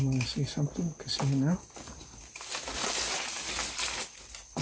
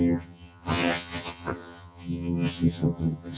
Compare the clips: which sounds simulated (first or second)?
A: second